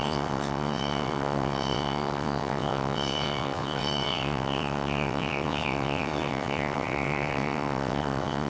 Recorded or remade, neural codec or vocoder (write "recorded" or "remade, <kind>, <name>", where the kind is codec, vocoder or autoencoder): remade, vocoder, WaveNeXt